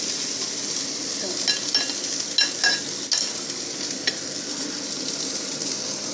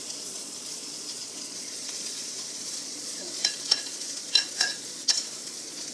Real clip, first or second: first